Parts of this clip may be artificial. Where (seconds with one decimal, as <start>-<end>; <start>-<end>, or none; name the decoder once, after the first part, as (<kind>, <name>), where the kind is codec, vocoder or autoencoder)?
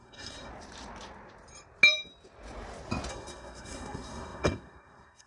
0.0-0.5 (codec, SNAC); 3.1-5.3